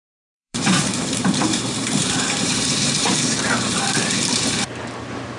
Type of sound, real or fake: fake